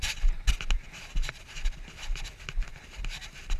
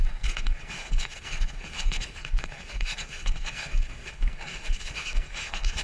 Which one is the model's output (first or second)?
second